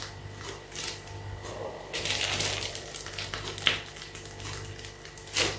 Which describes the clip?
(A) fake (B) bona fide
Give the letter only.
B